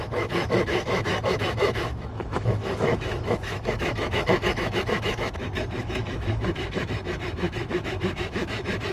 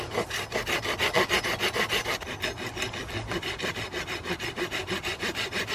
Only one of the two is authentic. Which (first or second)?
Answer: second